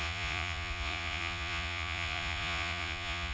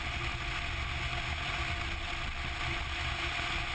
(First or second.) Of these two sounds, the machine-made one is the first